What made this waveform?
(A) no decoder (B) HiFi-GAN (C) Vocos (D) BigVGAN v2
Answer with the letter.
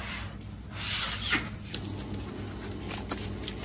A